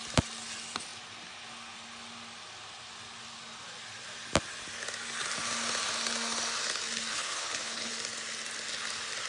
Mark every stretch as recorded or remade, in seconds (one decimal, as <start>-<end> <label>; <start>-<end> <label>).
0.0-7.1 recorded; 7.1-7.9 remade; 7.9-9.3 recorded

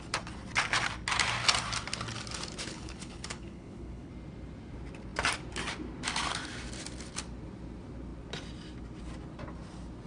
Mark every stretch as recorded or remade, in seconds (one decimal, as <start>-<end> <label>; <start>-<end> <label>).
0.0-2.7 recorded; 2.7-4.1 remade; 4.1-10.1 recorded